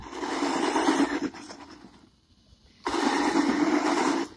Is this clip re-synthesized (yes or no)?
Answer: no